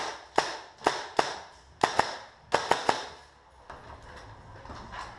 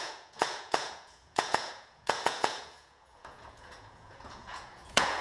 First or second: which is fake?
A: second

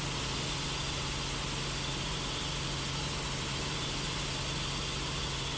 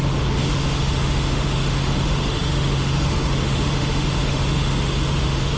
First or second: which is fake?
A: second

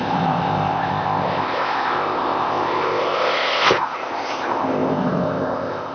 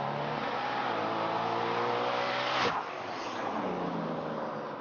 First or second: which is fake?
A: first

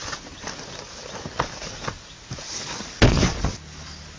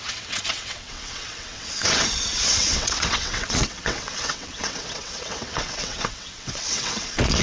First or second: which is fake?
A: second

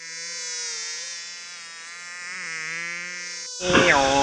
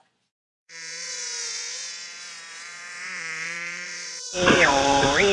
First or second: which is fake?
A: second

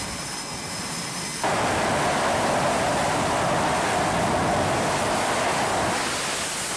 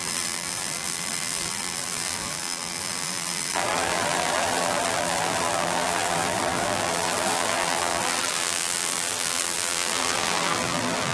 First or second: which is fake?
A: second